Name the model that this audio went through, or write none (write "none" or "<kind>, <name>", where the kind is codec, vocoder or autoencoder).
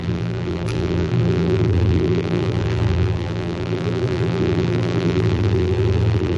vocoder, BigVGAN v2